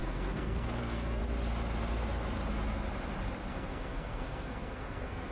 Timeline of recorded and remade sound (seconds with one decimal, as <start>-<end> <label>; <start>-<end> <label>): 0.0-1.2 remade; 1.2-3.5 recorded; 3.5-5.3 remade